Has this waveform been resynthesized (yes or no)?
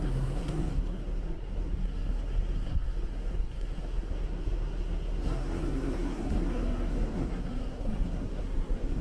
yes